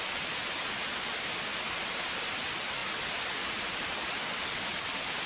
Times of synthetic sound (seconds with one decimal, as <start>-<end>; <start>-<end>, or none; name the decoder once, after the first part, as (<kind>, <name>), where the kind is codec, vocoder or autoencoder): none